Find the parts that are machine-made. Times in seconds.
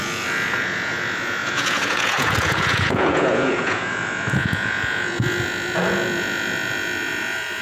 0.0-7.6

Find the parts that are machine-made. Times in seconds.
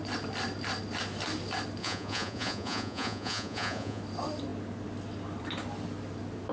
1.8-4.0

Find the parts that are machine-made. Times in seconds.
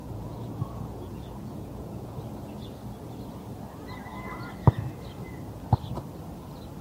0.0-2.2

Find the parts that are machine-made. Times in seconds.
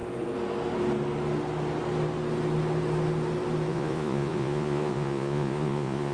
3.7-6.1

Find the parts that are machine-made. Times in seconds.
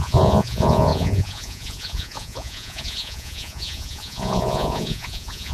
0.0-5.5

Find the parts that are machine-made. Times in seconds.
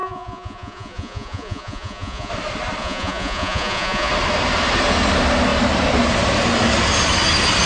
0.0-2.3; 2.8-4.1